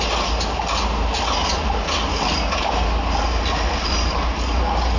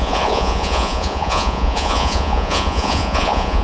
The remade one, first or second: second